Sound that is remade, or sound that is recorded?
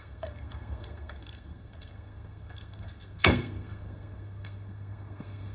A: remade